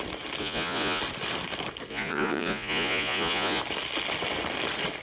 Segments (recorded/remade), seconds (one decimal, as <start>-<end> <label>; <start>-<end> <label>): 0.0-0.4 recorded; 0.4-1.0 remade; 1.0-1.9 recorded; 1.9-3.6 remade; 3.6-5.0 recorded